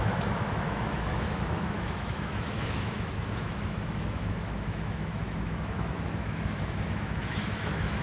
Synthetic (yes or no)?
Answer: yes